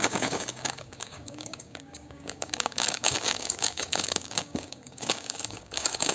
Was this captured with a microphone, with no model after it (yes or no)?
no